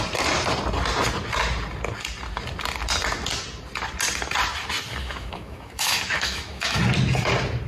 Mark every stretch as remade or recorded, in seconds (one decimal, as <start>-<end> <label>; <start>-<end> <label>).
0.0-5.0 recorded; 5.0-6.8 remade; 6.8-7.7 recorded